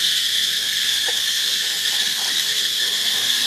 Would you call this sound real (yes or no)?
no